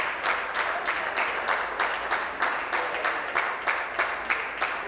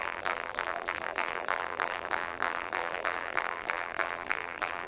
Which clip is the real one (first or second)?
first